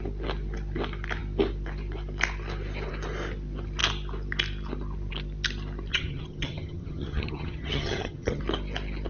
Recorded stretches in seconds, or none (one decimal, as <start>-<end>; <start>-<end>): 0.0-5.9; 8.4-9.1